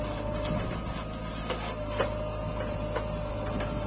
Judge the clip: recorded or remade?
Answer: recorded